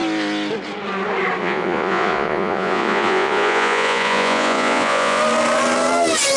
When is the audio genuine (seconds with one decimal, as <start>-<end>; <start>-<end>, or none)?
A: 0.0-1.4; 5.2-6.4